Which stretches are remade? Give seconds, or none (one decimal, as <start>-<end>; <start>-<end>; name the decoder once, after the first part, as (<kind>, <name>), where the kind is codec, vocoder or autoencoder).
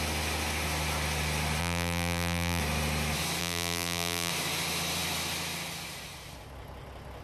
1.6-2.6 (vocoder, BigVGAN v2); 3.4-4.3